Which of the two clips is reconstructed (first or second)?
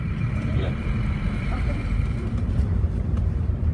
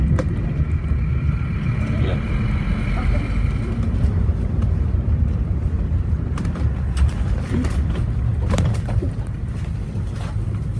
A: first